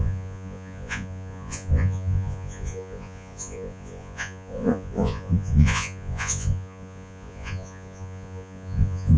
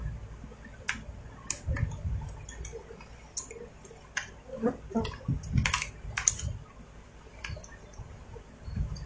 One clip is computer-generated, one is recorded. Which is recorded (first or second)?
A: second